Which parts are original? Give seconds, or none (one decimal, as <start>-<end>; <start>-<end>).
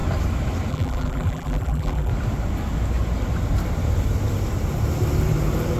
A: 0.0-0.7; 2.1-5.8